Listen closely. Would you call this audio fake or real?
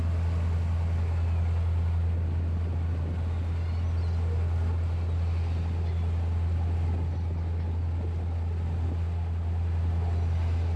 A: real